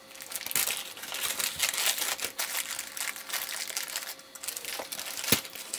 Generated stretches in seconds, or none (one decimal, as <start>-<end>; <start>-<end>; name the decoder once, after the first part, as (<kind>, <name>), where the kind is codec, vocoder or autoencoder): none